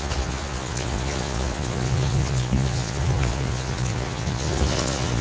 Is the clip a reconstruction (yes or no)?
yes